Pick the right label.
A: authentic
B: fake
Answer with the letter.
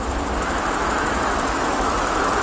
B